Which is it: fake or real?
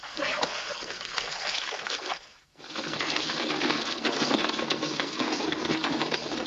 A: fake